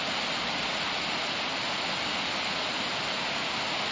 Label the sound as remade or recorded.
recorded